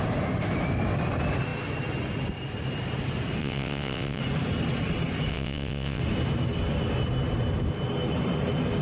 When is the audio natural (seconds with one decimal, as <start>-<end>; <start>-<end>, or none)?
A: 0.0-3.4; 4.2-5.3; 6.0-8.8